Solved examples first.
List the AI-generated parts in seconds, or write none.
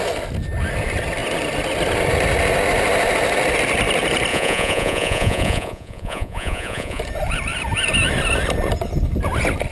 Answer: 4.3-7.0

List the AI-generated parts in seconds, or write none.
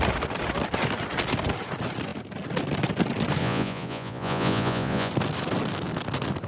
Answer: 3.4-5.1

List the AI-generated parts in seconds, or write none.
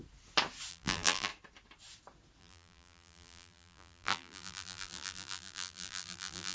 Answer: 0.7-1.3; 2.4-6.5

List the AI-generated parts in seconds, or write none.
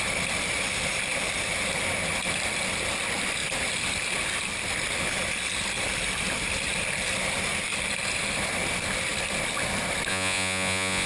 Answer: 10.1-11.1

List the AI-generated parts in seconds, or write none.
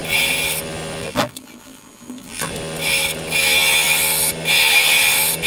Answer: 1.0-2.5